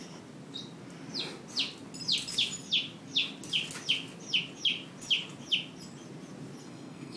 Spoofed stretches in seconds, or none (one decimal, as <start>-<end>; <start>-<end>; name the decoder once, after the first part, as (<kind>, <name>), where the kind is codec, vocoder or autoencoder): 6.6-7.2 (codec, SNAC)